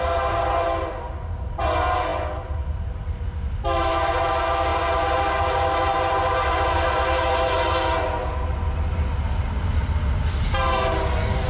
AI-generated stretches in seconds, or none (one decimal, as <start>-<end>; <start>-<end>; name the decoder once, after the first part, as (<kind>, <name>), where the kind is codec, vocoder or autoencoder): none